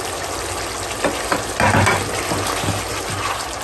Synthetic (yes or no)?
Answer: no